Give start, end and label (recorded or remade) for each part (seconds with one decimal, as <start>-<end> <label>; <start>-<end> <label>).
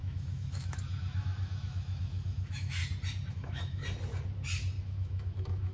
0.0-2.8 remade; 2.8-3.3 recorded; 3.3-3.8 remade; 3.8-4.8 recorded; 4.8-5.7 remade